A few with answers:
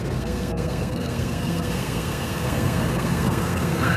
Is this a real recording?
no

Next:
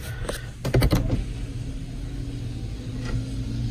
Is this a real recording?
yes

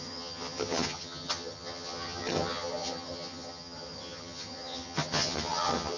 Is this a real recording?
no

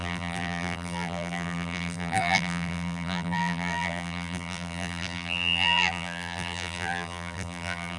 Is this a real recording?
no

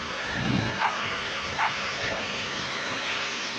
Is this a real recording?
no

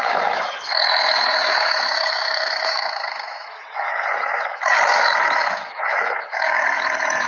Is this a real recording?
no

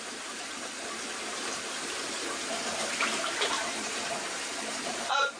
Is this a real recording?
no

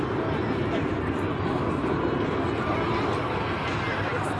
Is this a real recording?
yes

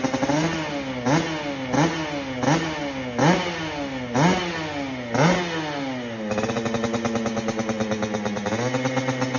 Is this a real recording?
yes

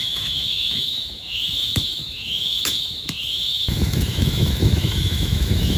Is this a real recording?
no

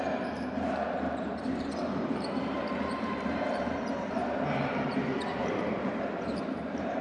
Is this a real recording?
no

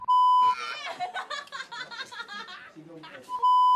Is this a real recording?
yes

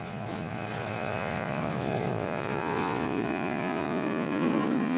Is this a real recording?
no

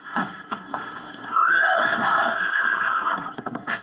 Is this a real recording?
no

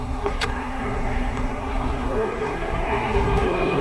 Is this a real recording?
no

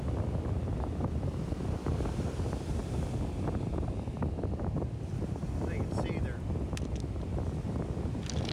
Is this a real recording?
yes